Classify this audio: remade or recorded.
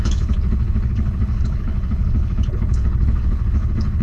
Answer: remade